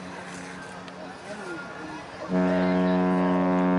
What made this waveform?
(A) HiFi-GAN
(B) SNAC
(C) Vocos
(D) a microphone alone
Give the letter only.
D